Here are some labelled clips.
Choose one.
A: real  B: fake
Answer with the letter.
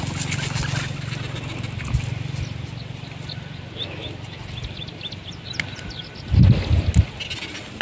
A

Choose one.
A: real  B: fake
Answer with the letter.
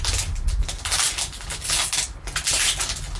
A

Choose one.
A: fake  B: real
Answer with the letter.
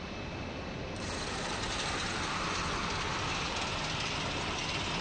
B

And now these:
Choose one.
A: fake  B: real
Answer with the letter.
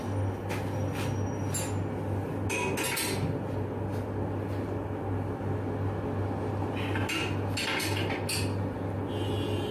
B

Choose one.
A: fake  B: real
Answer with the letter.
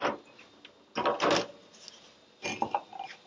B